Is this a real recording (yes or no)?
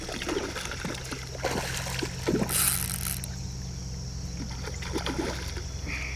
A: yes